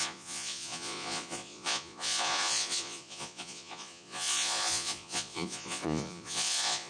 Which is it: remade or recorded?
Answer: remade